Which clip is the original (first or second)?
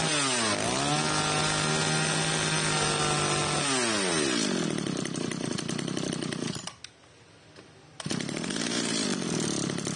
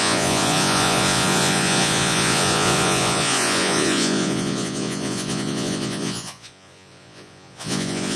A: first